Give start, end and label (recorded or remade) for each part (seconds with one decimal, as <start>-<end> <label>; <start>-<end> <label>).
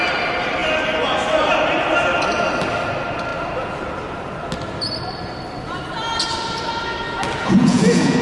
0.0-7.4 recorded; 7.4-8.2 remade